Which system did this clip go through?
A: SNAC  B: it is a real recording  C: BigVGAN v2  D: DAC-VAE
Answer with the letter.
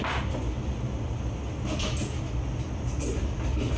B